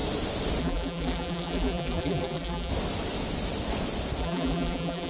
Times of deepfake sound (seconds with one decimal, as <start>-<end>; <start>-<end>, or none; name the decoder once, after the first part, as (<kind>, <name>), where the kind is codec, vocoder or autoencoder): 0.6-2.7 (vocoder, BigVGAN v2); 4.2-5.1